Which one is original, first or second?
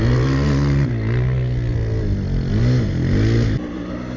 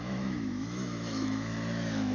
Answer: first